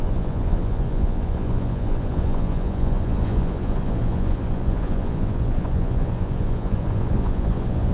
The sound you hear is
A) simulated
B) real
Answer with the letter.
A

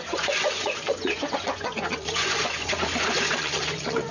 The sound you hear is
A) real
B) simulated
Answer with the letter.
B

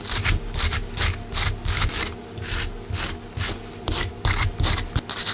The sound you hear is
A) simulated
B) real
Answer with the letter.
B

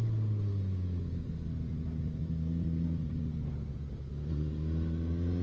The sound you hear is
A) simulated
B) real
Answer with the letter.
B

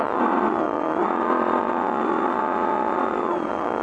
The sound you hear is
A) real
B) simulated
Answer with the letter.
B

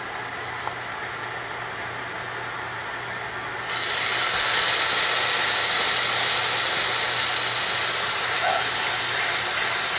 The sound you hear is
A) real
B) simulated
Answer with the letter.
A